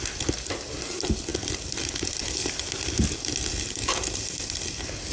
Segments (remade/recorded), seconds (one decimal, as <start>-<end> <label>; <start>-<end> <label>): 0.0-5.1 recorded